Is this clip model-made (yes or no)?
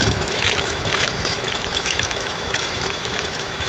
yes